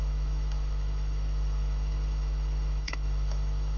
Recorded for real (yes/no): no